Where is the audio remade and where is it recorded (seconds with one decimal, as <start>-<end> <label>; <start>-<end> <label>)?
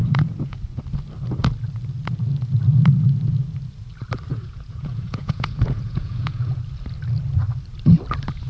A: 0.0-0.8 remade; 0.8-4.3 recorded; 4.3-6.6 remade; 6.6-8.5 recorded